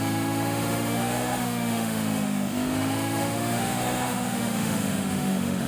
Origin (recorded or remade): remade